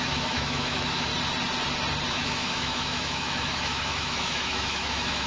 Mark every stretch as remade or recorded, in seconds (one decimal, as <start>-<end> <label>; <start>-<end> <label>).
0.0-1.1 remade; 1.1-2.1 recorded; 2.1-5.3 remade